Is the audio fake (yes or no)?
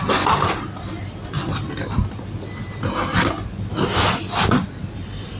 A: no